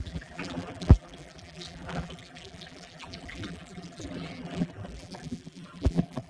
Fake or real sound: fake